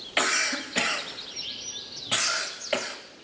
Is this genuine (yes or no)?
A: yes